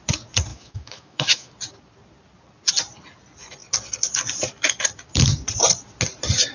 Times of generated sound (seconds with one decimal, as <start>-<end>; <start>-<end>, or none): 0.5-1.5